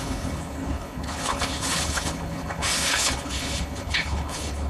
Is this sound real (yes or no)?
no